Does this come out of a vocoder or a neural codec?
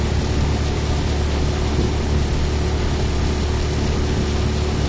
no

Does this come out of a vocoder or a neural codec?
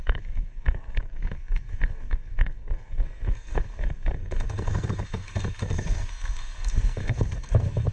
yes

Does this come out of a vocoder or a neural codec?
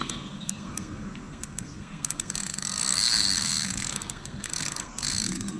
yes